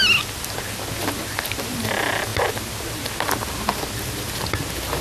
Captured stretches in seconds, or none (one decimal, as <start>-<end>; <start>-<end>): 0.0-5.0